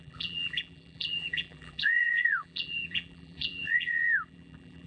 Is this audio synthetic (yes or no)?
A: yes